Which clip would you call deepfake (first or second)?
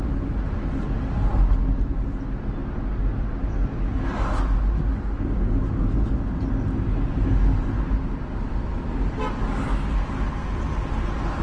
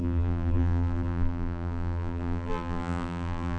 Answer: second